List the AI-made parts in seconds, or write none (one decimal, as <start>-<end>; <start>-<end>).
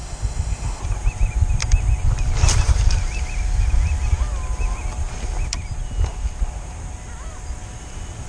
0.0-0.8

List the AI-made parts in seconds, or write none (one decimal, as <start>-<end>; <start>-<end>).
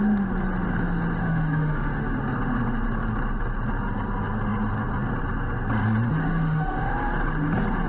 1.2-2.2; 6.2-6.9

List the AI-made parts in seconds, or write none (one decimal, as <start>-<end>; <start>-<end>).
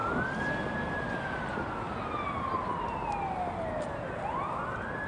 none